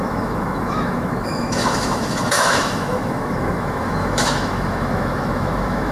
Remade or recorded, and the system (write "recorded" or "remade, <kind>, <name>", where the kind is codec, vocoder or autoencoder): remade, autoencoder, DAC-VAE